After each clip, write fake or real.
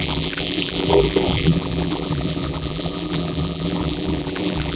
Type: fake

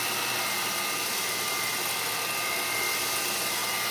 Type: real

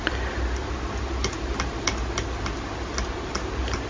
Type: real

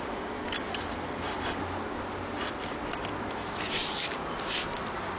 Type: real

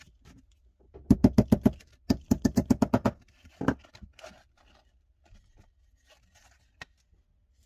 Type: real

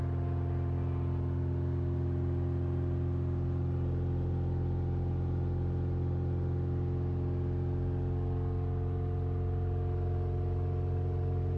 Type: real